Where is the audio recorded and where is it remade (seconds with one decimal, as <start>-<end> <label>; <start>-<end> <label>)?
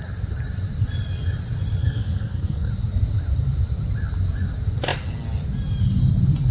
0.0-1.8 recorded; 1.8-2.7 remade; 2.7-6.5 recorded